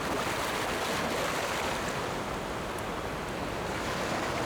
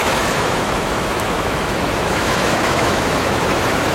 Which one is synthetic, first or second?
second